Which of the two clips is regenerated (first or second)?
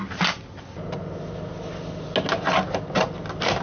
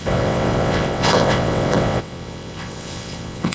second